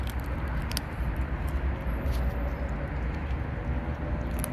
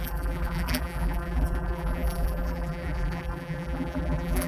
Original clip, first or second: first